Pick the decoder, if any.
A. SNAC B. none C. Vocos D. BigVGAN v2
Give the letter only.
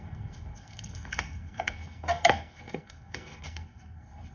A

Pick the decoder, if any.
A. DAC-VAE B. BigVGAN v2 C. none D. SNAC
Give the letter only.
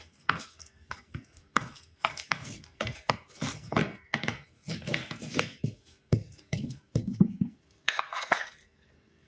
D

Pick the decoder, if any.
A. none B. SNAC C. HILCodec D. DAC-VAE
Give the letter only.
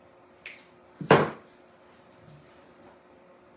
A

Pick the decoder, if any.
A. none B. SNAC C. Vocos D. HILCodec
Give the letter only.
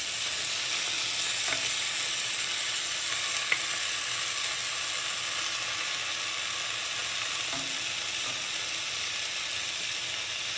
A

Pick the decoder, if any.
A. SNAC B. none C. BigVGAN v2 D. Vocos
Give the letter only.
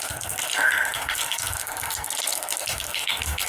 A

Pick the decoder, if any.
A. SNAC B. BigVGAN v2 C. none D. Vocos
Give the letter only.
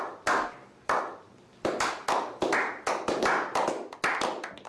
C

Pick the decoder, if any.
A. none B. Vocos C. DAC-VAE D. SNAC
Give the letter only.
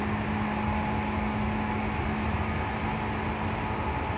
A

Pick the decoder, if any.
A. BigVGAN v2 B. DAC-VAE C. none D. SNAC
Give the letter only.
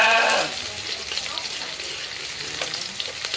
C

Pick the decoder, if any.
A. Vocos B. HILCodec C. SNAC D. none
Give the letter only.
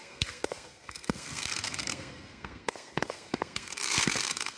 C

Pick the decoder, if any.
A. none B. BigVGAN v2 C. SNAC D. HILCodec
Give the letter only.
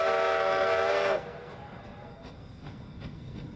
C